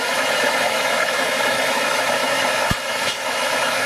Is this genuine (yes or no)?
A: no